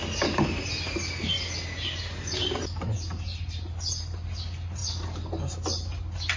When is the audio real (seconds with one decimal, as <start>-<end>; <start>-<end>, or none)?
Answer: 0.0-6.4